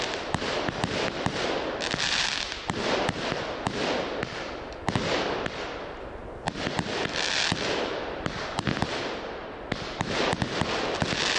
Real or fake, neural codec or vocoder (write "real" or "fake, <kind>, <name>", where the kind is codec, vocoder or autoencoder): real